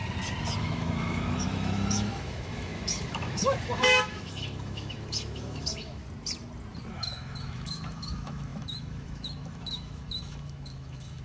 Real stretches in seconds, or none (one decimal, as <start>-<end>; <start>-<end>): 0.0-0.6; 6.0-6.9